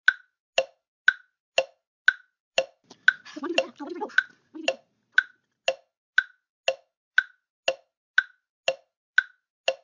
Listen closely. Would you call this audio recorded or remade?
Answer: recorded